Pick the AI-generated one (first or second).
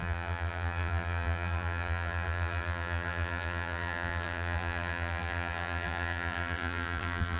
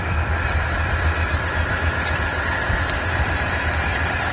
first